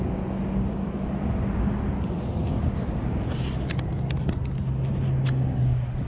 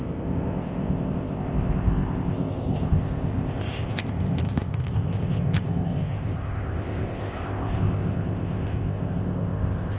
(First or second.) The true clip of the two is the first